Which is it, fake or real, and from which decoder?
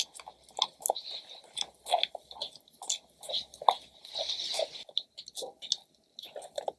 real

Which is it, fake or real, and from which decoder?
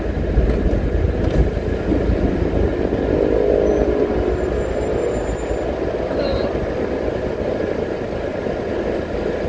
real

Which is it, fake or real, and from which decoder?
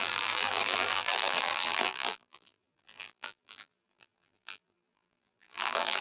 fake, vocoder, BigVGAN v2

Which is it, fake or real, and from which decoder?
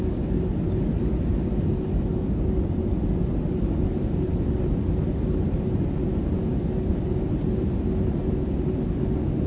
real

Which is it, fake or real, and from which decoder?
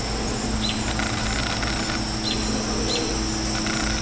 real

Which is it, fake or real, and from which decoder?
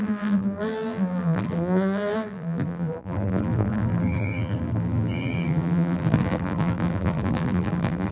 fake, vocoder, BigVGAN v2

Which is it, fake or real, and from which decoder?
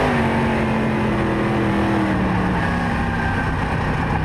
real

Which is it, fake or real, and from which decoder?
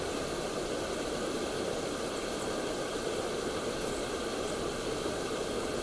real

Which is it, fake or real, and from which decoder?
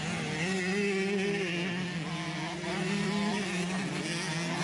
real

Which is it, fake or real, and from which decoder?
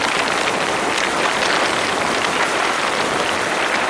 fake, vocoder, BigVGAN v2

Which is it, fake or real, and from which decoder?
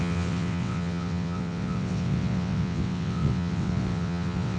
fake, vocoder, WaveNeXt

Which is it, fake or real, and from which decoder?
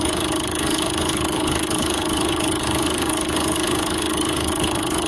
fake, codec, HILCodec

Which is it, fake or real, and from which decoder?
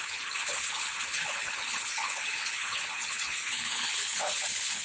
fake, codec, HILCodec